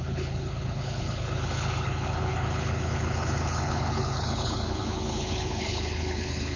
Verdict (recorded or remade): remade